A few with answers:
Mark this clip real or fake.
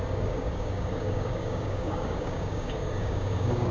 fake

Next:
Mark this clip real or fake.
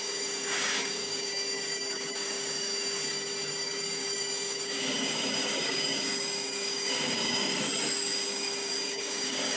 fake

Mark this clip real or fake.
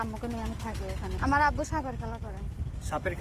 fake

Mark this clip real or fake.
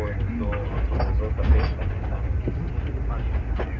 real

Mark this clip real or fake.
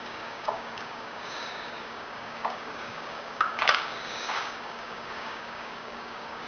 fake